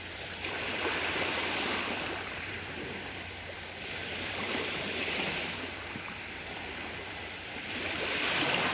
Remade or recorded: remade